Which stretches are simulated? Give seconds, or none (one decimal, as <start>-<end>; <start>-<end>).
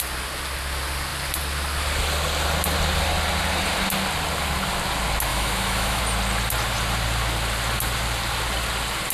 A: 5.3-6.0